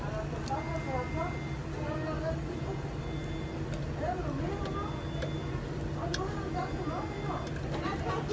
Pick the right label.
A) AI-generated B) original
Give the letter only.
B